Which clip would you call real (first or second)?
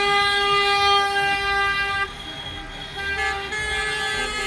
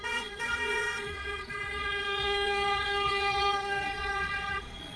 first